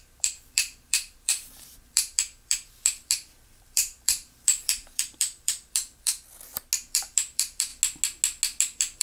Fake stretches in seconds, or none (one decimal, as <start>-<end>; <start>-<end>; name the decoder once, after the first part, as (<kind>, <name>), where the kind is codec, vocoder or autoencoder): 0.0-6.1 (vocoder, BigVGAN v2); 6.8-7.7; 8.6-9.0